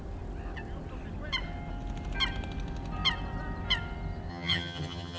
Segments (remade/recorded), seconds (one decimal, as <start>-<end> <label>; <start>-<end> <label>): 0.0-4.3 recorded; 4.3-5.2 remade